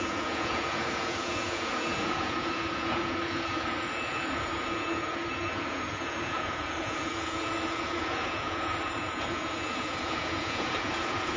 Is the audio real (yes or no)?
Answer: no